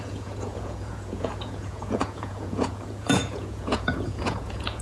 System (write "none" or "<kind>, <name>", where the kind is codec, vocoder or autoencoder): vocoder, Vocos